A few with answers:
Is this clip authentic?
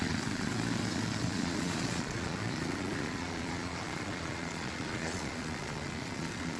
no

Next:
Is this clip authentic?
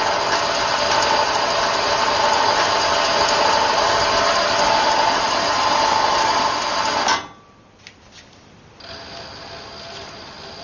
yes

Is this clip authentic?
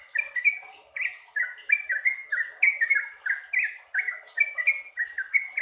yes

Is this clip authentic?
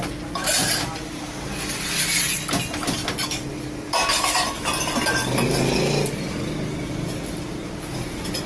yes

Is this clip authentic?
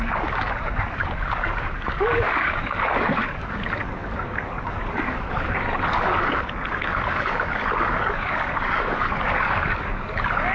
no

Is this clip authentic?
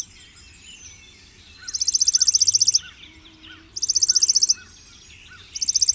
yes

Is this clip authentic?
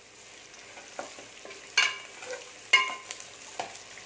yes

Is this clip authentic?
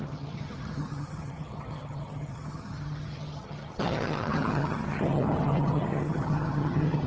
no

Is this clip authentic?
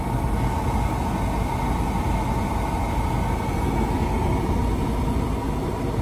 yes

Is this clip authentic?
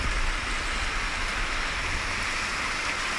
yes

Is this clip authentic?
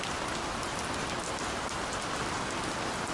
yes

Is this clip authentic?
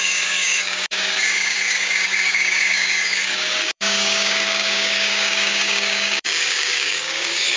no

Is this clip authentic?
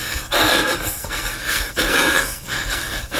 no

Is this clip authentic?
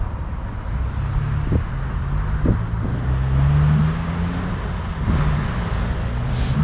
yes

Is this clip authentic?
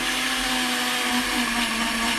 yes